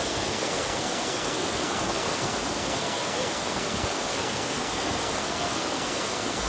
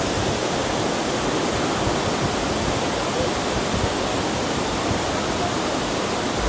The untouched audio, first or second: second